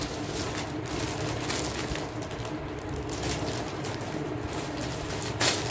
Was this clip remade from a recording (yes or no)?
no